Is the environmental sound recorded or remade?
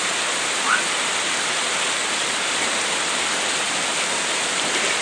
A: recorded